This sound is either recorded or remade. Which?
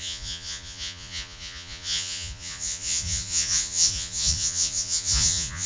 remade